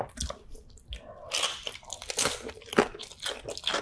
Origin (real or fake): real